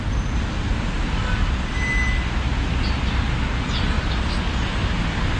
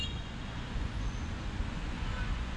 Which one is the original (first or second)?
first